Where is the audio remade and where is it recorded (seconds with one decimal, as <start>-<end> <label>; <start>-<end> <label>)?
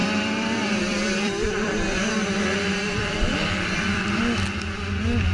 0.0-1.7 remade; 1.7-2.9 recorded; 2.9-4.2 remade; 4.2-5.3 recorded